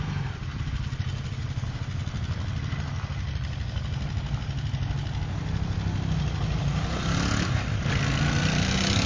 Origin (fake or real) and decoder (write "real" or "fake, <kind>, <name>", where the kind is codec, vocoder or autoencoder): real